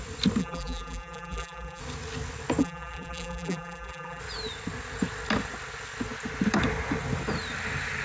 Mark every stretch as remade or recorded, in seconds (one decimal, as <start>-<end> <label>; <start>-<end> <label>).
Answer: 0.0-0.4 recorded; 0.4-1.8 remade; 1.8-2.6 recorded; 2.6-4.2 remade; 4.2-8.0 recorded